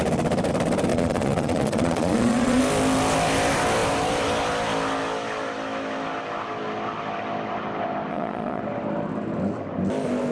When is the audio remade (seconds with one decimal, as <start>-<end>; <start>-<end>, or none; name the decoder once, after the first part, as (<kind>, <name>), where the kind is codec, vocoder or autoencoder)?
0.9-2.6 (vocoder, Vocos); 8.1-8.6